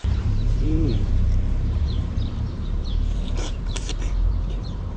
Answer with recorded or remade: remade